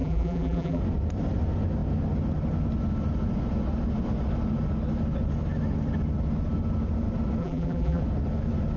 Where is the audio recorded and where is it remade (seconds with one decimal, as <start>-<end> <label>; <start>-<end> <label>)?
0.0-0.8 remade; 0.8-7.4 recorded; 7.4-8.0 remade; 8.0-8.8 recorded

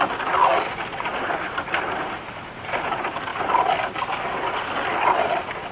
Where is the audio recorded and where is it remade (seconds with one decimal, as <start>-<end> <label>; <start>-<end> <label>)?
0.0-5.7 recorded